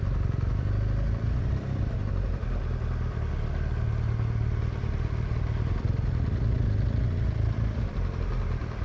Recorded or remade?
recorded